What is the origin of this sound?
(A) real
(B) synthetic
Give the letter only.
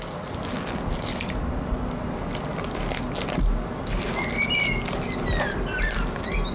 A